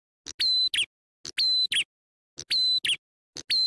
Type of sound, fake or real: real